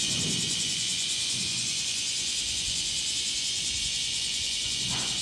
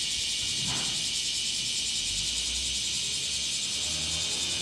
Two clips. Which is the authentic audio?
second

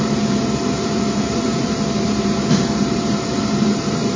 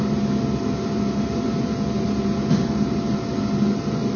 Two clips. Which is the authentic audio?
second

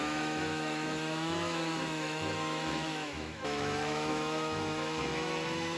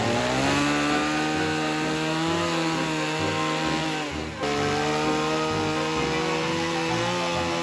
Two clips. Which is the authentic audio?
second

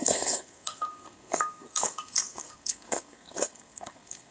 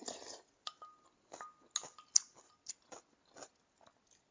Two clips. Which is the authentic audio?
second